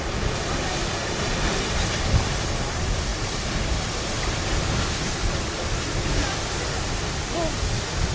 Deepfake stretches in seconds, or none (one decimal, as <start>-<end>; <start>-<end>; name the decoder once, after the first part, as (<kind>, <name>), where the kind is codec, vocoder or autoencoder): none